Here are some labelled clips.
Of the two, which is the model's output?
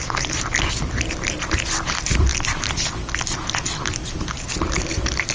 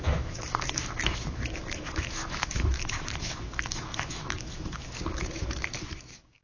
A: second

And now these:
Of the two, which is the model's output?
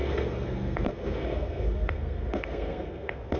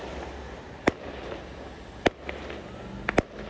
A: first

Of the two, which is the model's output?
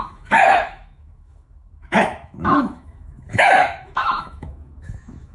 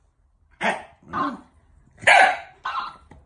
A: first